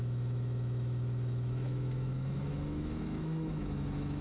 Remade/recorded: remade